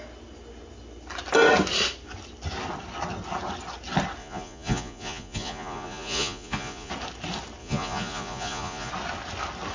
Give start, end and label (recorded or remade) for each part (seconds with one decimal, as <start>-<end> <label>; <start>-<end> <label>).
0.0-4.2 recorded; 4.2-6.9 remade; 6.9-7.6 recorded; 7.6-8.9 remade; 8.9-9.7 recorded